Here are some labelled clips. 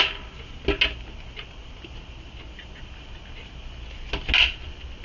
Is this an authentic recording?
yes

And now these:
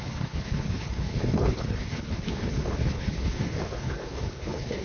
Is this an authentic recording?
no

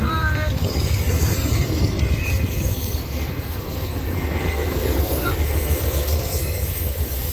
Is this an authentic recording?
no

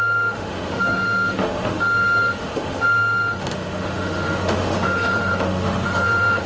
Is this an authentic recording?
no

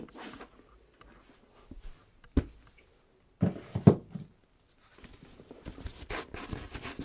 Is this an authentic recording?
yes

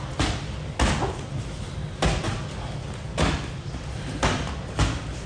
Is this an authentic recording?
yes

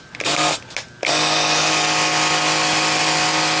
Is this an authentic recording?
yes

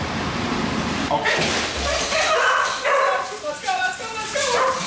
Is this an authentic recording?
no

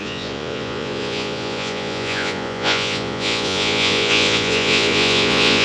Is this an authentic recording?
no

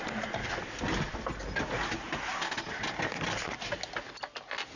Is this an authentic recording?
yes